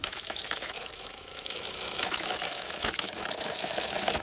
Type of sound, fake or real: fake